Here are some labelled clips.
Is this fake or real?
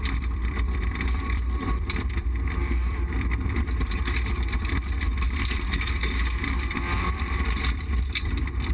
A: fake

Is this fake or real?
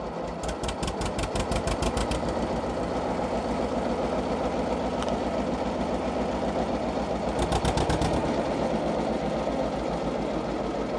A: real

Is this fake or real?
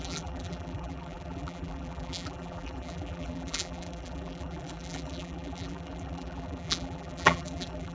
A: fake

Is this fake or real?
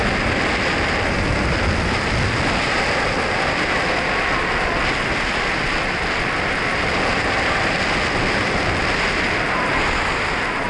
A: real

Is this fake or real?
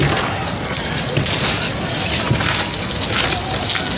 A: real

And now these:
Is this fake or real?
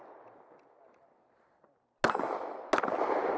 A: real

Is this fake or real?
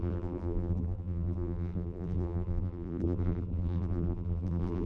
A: fake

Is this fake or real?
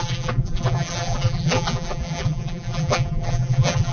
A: fake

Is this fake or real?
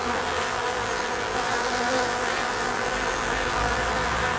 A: fake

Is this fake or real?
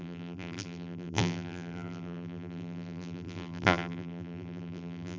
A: fake